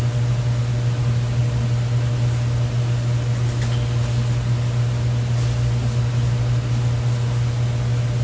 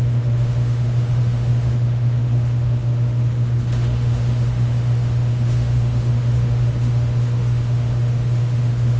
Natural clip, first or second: first